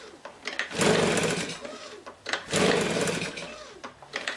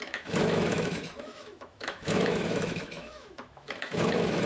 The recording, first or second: first